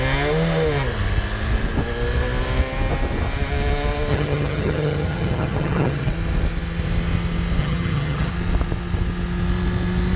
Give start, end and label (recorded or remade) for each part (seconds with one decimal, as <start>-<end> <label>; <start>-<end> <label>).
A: 0.0-4.1 recorded; 4.1-6.1 remade; 6.1-7.6 recorded; 7.6-8.3 remade; 8.3-10.2 recorded